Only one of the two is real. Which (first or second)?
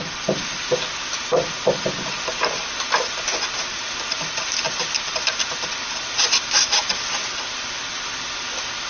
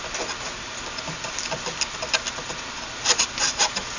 second